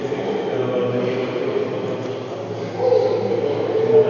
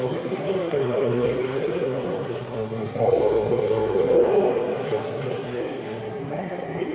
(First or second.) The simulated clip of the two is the second